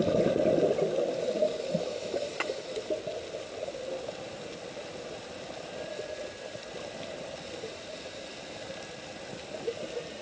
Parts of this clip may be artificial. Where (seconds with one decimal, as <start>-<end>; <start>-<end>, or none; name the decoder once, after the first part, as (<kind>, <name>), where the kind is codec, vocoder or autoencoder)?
1.9-2.6 (autoencoder, DAC-VAE)